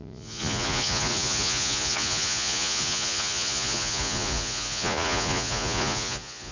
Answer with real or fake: fake